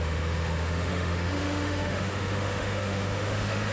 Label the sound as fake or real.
fake